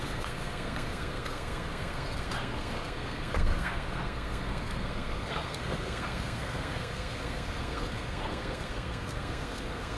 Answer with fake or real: fake